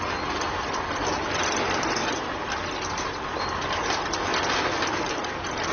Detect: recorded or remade recorded